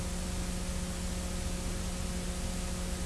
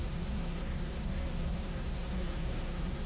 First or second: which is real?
first